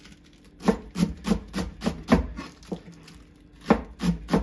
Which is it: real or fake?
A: real